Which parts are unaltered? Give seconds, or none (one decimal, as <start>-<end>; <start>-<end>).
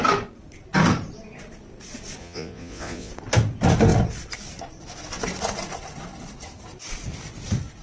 0.0-2.2; 3.1-7.8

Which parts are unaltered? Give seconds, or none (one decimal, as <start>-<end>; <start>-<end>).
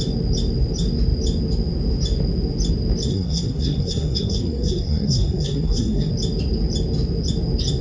0.0-3.1; 6.1-7.8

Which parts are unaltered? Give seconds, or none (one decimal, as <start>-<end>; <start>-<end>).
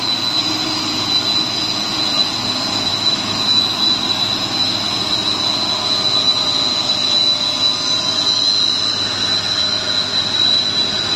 0.0-2.9; 3.6-4.4; 5.0-11.2